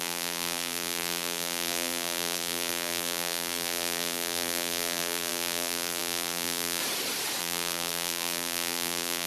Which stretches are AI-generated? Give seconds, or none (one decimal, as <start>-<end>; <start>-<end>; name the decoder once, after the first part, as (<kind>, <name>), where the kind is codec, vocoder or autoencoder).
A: 0.0-6.8 (vocoder, BigVGAN v2); 7.4-9.3